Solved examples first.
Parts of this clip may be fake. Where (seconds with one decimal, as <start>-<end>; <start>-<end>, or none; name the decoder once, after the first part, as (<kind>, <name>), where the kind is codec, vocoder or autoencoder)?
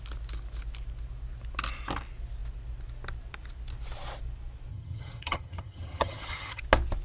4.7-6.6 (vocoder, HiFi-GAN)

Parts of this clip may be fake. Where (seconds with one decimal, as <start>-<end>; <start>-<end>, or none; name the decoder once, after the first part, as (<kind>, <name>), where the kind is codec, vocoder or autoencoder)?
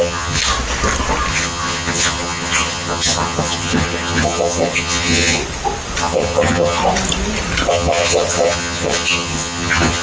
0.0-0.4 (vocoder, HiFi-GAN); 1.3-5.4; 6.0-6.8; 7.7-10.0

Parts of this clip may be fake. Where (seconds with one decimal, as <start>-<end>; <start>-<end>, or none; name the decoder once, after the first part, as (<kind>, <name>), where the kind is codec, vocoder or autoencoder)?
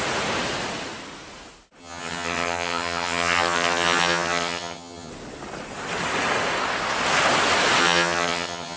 1.8-5.1 (vocoder, HiFi-GAN); 7.8-8.8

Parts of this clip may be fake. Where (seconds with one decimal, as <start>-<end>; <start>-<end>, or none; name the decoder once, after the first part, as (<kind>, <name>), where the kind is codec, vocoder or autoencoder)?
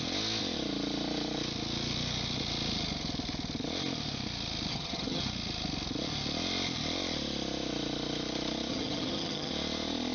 4.7-5.2 (vocoder, HiFi-GAN); 8.7-9.5